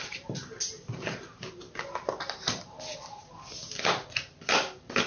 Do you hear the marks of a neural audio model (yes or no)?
no